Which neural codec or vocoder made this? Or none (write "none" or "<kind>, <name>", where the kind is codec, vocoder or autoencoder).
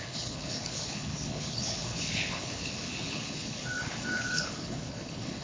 codec, HILCodec